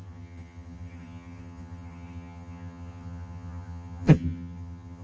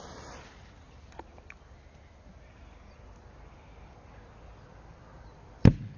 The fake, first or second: first